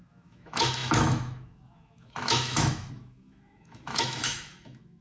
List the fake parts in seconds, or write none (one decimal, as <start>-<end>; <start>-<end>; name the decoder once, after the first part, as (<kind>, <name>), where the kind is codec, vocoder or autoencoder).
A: 0.0-5.0 (autoencoder, DAC-VAE)